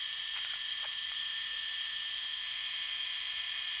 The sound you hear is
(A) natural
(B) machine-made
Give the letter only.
B